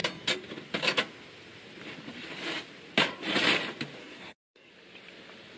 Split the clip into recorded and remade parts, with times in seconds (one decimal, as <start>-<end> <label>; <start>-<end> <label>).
0.0-4.0 recorded; 4.0-4.7 remade; 4.7-5.6 recorded